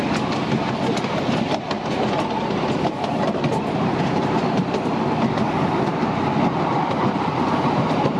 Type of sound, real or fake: real